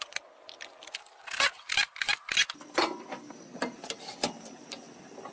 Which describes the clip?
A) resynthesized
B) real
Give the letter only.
B